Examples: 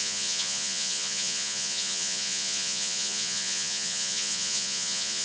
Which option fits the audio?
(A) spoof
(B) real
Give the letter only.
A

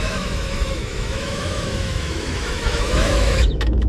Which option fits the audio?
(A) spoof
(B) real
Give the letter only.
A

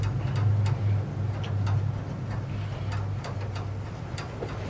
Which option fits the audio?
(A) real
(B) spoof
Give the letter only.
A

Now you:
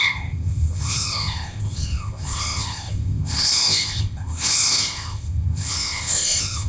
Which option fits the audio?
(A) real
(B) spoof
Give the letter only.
B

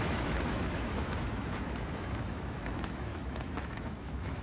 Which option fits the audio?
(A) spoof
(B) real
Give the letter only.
A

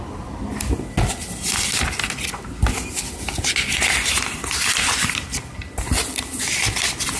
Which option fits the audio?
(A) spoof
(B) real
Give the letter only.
B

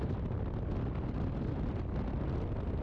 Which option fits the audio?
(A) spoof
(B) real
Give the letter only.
B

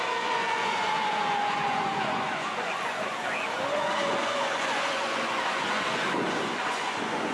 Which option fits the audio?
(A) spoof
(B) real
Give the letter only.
A